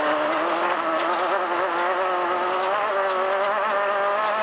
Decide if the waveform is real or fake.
real